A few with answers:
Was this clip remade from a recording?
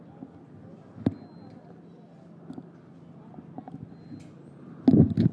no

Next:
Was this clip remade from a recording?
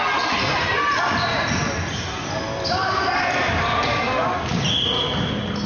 no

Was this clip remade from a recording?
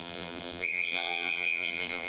yes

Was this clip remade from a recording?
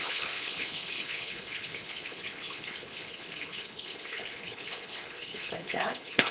yes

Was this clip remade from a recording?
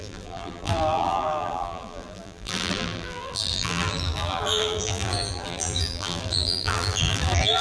yes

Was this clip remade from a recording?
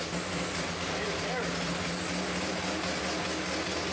no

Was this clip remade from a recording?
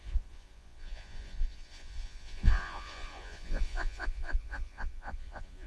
yes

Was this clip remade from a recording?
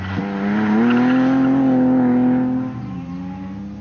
no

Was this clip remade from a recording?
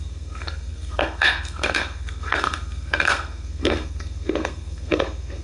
yes